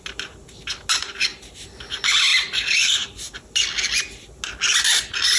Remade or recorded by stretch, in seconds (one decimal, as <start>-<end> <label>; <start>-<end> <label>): 0.0-5.4 recorded